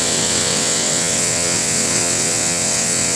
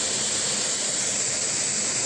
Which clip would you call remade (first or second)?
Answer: first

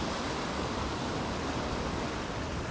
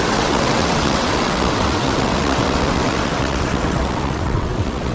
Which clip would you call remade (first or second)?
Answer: second